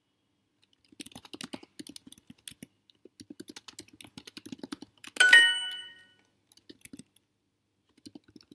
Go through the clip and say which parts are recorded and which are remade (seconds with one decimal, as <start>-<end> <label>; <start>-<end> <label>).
0.0-8.5 recorded